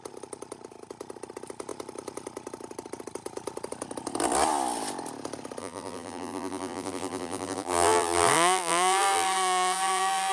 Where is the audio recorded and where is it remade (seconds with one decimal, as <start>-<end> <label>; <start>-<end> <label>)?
0.0-5.6 recorded; 5.6-10.3 remade

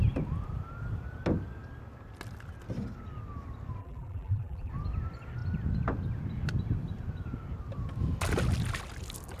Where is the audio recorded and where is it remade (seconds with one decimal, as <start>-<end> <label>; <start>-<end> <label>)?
0.0-3.8 recorded; 3.8-4.7 remade; 4.7-9.4 recorded